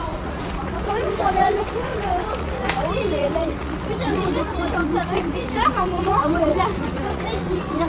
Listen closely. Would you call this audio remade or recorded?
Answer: remade